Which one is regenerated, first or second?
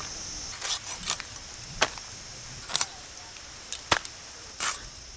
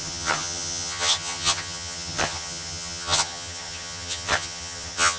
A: second